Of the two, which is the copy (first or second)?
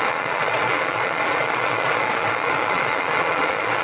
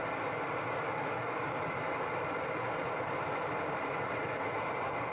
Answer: first